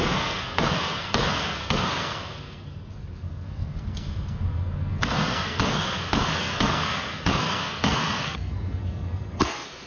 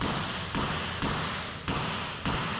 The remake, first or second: first